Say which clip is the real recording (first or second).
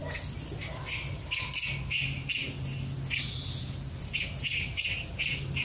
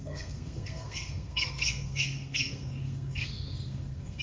first